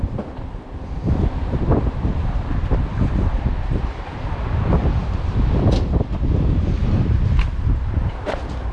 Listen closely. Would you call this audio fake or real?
fake